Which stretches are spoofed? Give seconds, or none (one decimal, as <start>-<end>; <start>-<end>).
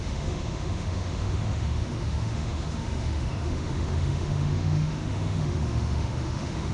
0.0-6.7